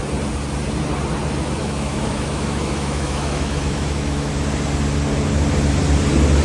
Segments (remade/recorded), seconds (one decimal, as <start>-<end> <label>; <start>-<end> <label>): 0.0-1.6 recorded; 1.6-4.3 remade; 4.3-6.4 recorded